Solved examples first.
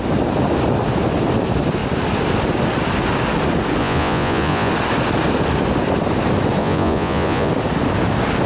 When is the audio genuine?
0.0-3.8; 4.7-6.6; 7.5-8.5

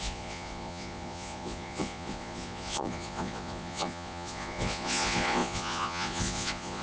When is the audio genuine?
none

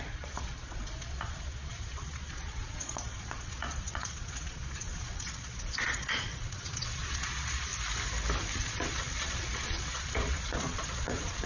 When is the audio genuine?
7.7-8.5

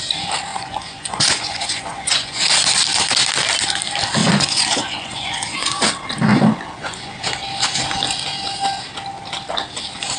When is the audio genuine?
0.0-0.5; 2.4-4.2; 5.8-6.3; 7.2-10.2